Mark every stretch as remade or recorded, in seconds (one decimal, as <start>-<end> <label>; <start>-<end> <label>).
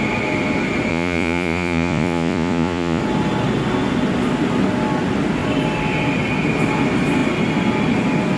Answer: 0.0-0.9 recorded; 0.9-3.0 remade; 3.0-8.4 recorded